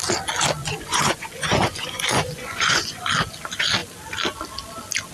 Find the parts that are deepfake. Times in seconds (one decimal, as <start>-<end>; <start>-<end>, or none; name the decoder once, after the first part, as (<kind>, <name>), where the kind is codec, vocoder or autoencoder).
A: 0.6-3.0 (vocoder, Vocos)